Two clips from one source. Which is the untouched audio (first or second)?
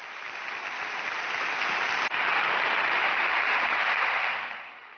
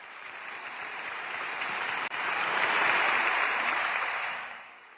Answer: first